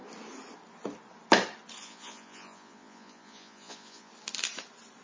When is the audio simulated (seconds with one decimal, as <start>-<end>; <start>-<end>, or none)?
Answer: 1.8-4.1